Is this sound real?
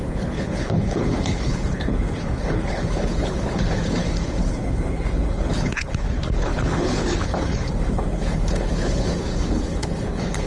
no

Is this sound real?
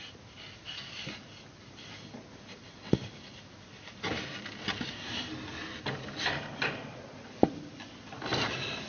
yes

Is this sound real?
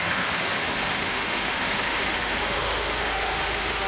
no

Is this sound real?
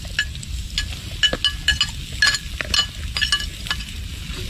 yes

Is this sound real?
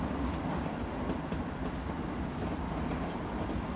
no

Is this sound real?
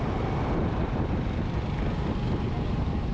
yes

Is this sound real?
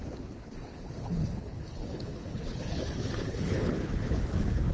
no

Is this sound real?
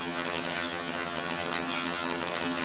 no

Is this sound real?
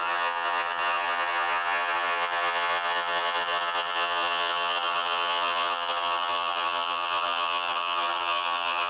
no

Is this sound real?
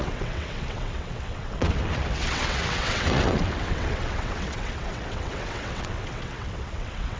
no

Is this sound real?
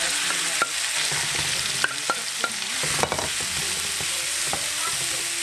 yes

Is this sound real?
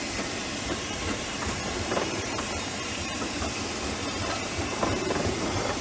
no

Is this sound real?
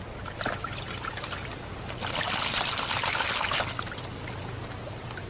yes